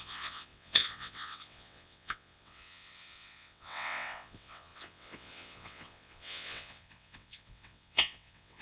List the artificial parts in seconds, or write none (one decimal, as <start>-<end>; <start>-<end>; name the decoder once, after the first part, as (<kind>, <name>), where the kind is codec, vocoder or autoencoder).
0.0-8.6 (vocoder, WaveNeXt)